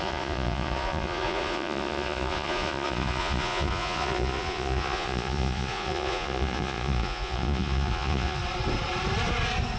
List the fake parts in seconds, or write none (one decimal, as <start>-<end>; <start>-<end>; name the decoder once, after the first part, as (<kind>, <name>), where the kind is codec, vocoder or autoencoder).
0.0-8.4 (vocoder, Vocos)